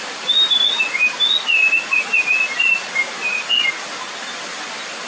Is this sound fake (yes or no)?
no